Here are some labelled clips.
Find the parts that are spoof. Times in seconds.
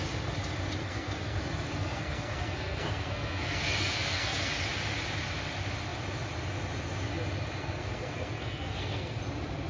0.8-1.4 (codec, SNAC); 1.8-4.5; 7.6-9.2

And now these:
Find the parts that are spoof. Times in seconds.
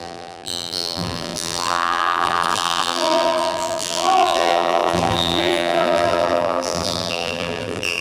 0.0-8.0 (vocoder, BigVGAN v2)